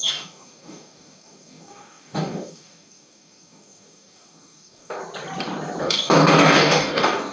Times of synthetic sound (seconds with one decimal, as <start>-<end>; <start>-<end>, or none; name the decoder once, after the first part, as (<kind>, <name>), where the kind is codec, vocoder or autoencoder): 0.0-5.0 (codec, DAC); 5.8-7.3